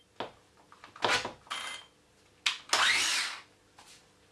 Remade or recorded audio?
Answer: recorded